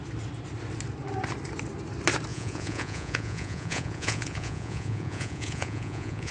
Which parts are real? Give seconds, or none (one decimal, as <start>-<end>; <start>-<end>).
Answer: 0.0-2.3